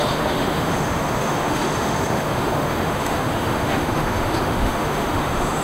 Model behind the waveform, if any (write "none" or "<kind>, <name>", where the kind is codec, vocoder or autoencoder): autoencoder, DAC-VAE